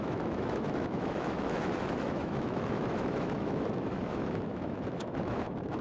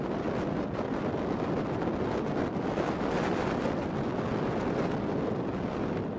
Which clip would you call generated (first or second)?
first